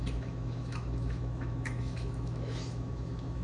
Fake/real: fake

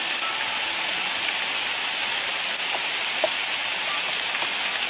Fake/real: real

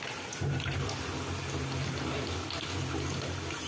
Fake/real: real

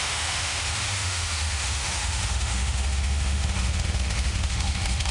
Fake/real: fake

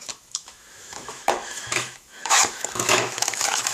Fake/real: fake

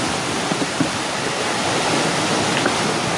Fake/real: real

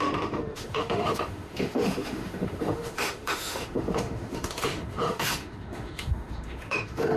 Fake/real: fake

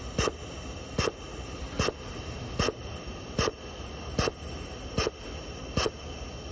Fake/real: real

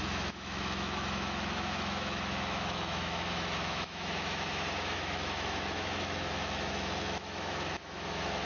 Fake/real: fake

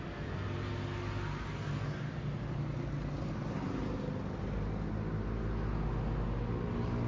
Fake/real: real